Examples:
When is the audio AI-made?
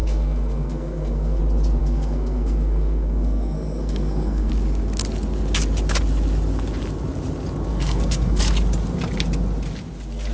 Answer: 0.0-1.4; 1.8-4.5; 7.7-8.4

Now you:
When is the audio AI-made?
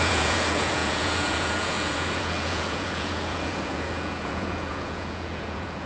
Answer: 0.0-5.9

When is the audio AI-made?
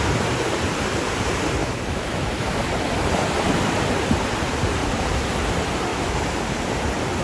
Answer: 1.6-2.6; 5.9-6.4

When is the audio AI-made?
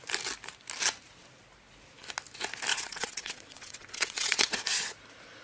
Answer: 2.7-4.6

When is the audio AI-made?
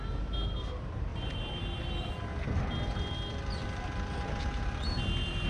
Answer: 0.0-5.5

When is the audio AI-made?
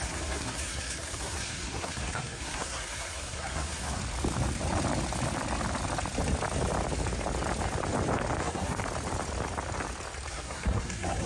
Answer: 0.0-4.0; 8.4-8.8; 10.3-11.3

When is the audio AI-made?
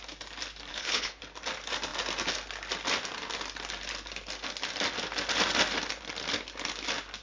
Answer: 0.7-1.2